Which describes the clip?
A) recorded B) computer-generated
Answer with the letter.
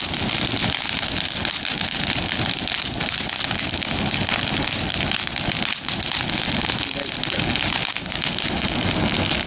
A